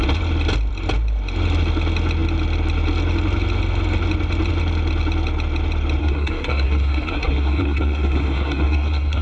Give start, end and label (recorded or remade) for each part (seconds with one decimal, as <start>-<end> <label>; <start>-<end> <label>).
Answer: 0.0-6.0 recorded; 6.0-9.2 remade